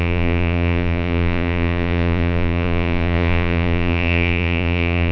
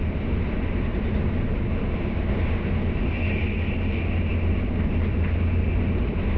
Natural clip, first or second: second